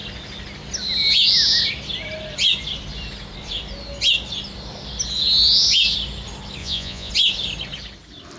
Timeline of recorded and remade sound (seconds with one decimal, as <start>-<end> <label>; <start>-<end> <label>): 0.0-6.6 recorded; 6.6-7.1 remade; 7.1-8.4 recorded